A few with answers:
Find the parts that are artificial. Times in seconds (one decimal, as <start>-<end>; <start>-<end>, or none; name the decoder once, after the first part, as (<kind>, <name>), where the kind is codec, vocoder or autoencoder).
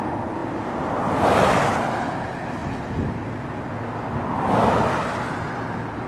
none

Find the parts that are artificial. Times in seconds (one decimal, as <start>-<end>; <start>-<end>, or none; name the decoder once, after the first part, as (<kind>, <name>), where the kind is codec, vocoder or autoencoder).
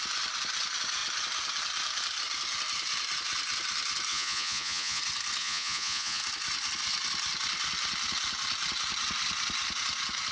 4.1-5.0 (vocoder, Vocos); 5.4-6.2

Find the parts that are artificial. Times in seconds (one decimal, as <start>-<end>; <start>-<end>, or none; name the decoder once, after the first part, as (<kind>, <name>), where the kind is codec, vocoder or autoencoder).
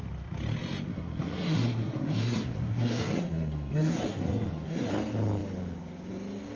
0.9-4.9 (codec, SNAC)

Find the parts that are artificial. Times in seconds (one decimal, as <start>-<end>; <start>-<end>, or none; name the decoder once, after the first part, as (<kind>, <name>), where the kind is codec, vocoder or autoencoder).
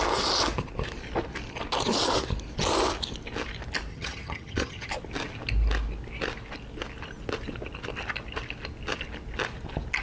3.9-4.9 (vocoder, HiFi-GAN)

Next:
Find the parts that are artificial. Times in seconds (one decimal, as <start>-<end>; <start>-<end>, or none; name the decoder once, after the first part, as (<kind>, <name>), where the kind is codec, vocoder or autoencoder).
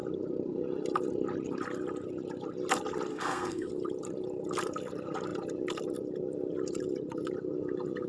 3.1-3.7 (codec, SNAC)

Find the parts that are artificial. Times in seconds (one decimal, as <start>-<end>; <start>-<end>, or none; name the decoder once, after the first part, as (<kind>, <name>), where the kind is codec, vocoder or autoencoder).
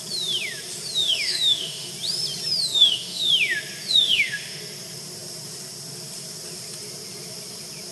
1.0-1.9 (autoencoder, DAC-VAE); 2.7-3.3; 3.9-4.6